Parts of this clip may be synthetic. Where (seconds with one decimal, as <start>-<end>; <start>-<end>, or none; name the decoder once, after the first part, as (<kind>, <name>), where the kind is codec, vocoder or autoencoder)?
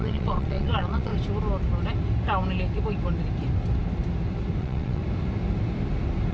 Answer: 0.0-1.1 (vocoder, WaveNeXt); 4.6-5.0